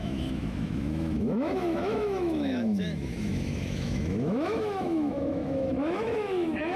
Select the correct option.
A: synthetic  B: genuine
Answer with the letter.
A